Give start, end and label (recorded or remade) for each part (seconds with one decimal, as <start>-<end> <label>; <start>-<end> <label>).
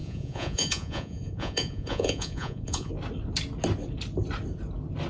0.0-2.9 remade; 2.9-5.1 recorded